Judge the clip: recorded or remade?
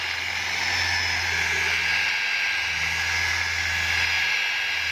recorded